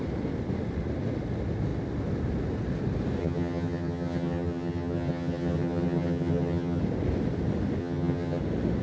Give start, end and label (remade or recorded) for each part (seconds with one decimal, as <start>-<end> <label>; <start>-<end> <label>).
0.0-3.2 recorded; 3.2-6.8 remade; 6.8-7.8 recorded; 7.8-8.4 remade; 8.4-8.8 recorded